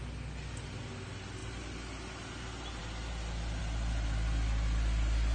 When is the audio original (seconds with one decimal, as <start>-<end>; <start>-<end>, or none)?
0.0-5.3